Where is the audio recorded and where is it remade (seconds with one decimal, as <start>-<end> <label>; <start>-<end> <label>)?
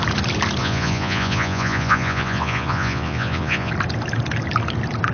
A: 0.0-0.6 recorded; 0.6-3.7 remade; 3.7-5.1 recorded